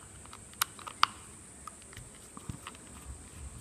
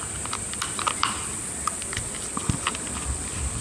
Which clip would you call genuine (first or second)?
first